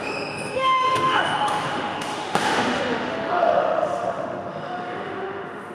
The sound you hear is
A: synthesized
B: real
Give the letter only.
A